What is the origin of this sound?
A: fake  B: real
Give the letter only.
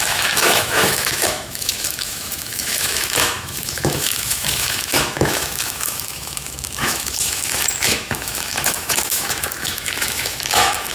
A